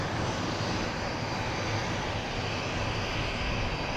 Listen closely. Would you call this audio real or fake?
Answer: real